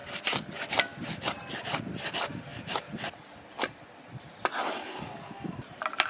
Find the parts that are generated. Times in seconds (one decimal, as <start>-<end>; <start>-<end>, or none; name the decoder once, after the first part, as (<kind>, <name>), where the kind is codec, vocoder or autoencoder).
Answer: none